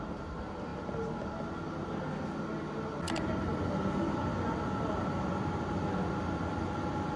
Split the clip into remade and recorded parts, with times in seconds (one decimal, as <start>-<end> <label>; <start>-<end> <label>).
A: 0.0-7.2 recorded